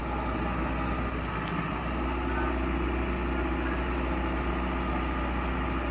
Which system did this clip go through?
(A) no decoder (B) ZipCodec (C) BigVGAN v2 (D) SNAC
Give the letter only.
A